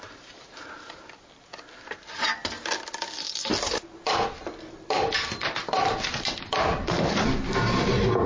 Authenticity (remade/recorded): recorded